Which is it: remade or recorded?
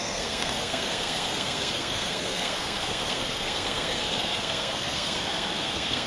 remade